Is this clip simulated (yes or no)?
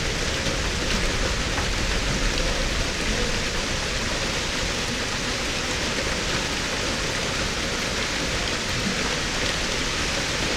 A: no